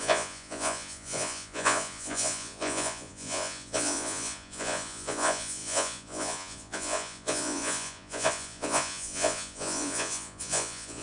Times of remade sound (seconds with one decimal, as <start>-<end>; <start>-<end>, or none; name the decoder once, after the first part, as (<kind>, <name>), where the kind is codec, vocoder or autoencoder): 0.0-11.0 (vocoder, Vocos)